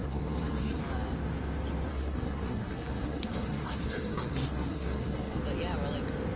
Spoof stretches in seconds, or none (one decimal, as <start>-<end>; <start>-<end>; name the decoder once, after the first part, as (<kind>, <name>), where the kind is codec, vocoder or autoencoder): 0.0-0.8 (codec, SNAC); 1.9-5.4

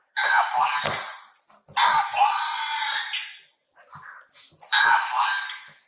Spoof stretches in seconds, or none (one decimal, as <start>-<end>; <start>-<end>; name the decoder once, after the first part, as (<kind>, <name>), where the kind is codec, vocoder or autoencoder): none

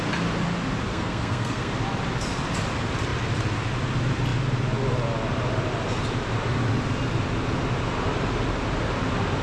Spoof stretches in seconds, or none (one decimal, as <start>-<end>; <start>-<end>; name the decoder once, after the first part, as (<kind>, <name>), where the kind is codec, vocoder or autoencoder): 0.9-1.7 (codec, SNAC)

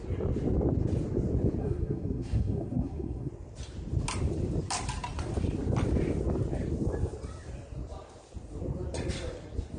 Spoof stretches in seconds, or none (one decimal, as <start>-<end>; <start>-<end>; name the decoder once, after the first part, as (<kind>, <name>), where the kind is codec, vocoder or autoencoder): 1.6-3.3 (codec, SNAC)